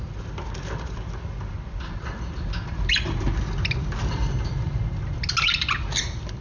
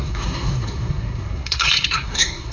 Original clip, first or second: first